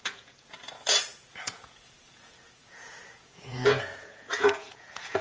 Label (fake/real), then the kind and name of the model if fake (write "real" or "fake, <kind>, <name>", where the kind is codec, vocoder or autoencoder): fake, vocoder, Vocos